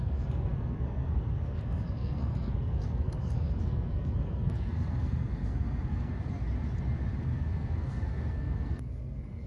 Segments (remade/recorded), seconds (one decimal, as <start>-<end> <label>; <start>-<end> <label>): 0.0-6.1 remade; 6.1-7.2 recorded; 7.2-9.5 remade